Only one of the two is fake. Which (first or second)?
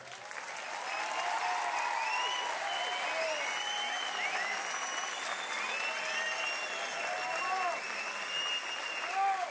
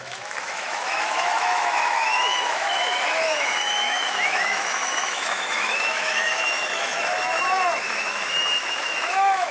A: second